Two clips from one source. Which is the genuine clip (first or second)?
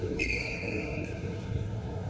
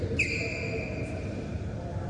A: second